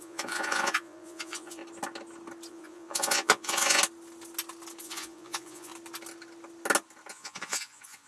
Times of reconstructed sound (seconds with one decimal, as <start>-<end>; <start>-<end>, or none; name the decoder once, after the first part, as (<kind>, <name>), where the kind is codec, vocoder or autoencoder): 0.0-1.6 (vocoder, Vocos); 2.5-3.8; 4.8-5.7; 7.1-8.1